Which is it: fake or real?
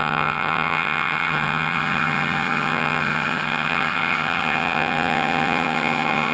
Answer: fake